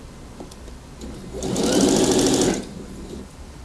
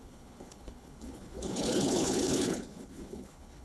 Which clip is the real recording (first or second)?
first